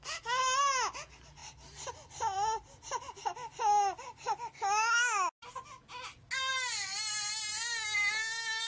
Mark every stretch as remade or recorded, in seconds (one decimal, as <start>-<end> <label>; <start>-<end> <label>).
0.0-1.4 recorded; 1.4-1.9 remade; 1.9-8.7 recorded